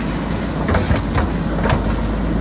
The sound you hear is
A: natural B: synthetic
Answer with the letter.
A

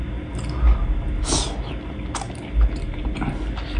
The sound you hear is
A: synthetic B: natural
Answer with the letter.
B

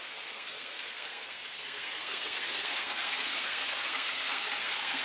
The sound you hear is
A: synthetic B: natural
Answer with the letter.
A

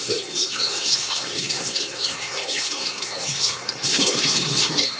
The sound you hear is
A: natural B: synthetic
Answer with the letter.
B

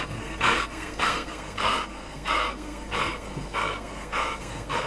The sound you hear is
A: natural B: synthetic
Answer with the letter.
B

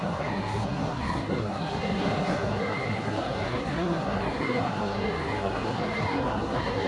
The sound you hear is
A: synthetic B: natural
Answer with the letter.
A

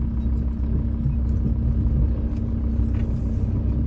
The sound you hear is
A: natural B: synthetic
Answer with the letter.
A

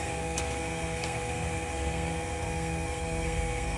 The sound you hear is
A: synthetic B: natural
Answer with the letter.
A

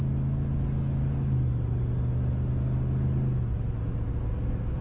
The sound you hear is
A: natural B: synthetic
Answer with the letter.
A